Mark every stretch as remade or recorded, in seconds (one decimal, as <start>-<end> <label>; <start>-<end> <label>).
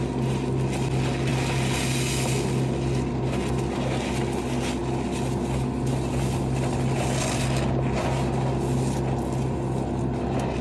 0.0-10.6 recorded